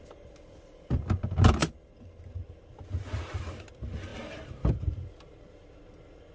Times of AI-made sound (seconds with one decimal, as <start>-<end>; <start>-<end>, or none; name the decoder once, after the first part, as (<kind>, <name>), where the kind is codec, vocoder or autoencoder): none